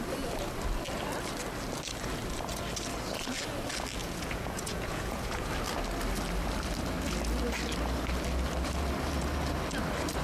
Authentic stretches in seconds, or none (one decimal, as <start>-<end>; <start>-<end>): 0.0-4.0; 5.5-10.2